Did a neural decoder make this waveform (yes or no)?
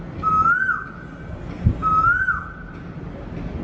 no